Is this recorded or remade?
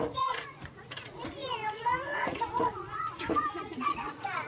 remade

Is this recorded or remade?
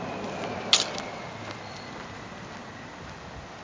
recorded